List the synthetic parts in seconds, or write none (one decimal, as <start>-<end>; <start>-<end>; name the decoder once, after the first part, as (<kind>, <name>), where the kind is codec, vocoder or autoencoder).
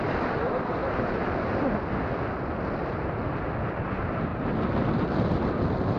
0.0-0.8 (vocoder, BigVGAN v2); 3.1-4.3; 5.0-6.0